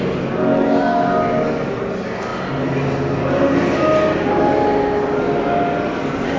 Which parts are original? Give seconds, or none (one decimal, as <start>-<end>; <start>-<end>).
0.0-6.4